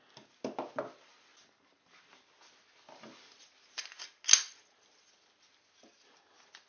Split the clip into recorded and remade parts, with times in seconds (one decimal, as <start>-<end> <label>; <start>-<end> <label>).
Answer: 0.0-6.7 recorded